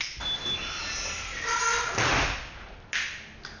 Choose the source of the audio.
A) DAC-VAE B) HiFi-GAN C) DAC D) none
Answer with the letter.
D